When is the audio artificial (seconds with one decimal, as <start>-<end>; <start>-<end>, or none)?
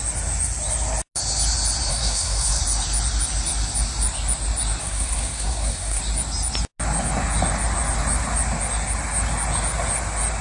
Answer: 1.9-2.6; 4.8-6.0